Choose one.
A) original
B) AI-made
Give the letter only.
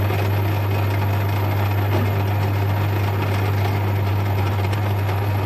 A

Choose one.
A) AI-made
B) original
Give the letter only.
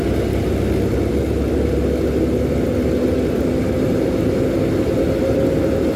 B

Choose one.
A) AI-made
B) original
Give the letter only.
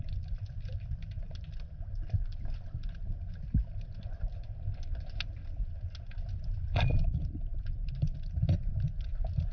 B